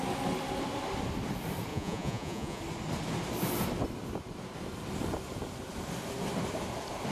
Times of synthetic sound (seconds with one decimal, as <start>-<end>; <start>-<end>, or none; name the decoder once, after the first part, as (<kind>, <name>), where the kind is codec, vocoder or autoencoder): 1.7-2.6 (vocoder, Vocos)